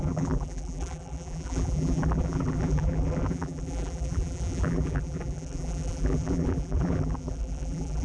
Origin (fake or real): fake